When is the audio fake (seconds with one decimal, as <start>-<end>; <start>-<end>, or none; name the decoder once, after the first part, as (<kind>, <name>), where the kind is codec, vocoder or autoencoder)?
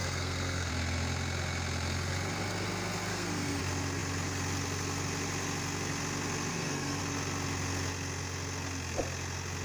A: 0.0-0.7 (codec, SNAC); 3.1-3.6; 6.5-7.0